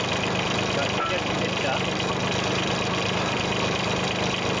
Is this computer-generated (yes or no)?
no